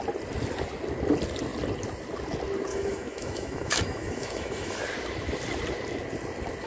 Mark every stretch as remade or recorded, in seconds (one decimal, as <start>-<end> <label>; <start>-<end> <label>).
0.0-2.7 recorded; 2.7-4.8 remade; 4.8-6.7 recorded